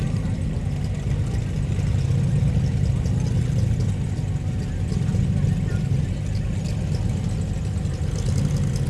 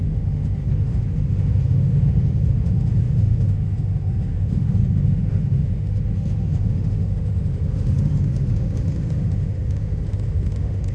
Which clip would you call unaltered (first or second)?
first